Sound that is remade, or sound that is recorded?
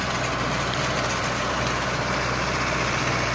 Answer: recorded